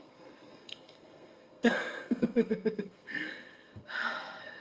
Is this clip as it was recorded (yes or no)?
no